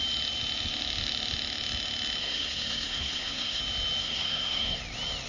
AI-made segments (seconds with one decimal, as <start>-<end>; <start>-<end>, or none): 2.2-3.6; 4.0-4.8